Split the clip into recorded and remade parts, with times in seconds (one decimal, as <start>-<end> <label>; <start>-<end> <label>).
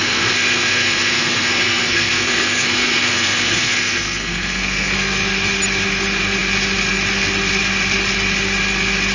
0.0-5.2 remade; 5.2-9.1 recorded